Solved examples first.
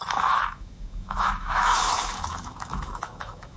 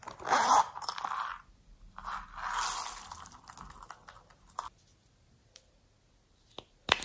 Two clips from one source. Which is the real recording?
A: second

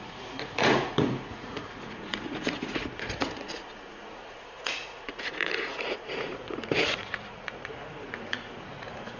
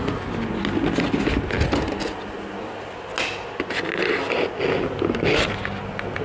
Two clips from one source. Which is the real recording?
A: second